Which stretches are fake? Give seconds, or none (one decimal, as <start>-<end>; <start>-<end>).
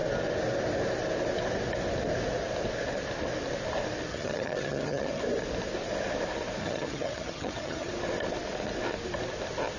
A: 4.1-5.2; 6.6-7.9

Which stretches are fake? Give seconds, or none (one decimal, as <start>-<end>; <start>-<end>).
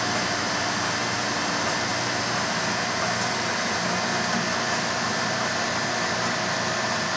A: none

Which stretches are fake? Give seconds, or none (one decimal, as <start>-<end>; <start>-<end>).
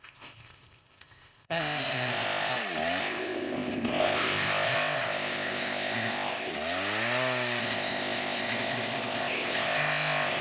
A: 0.0-2.5; 3.0-6.5; 7.6-10.4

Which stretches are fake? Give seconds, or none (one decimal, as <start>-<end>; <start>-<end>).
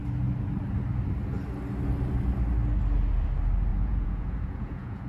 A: 3.7-5.1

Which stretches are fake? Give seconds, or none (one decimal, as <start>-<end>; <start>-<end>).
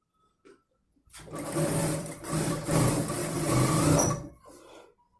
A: 1.8-2.5; 3.2-4.3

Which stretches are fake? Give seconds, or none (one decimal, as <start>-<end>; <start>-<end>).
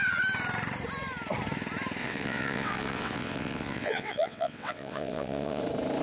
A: 2.0-5.6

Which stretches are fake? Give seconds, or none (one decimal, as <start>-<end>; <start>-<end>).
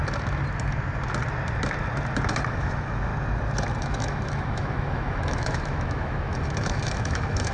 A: 2.5-3.1; 3.8-7.5